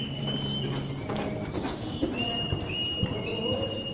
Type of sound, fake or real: real